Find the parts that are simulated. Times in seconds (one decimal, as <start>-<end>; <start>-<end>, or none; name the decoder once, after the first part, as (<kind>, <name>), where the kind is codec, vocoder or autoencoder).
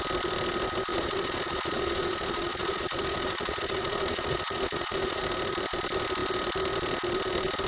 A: 0.9-5.2 (vocoder, Vocos)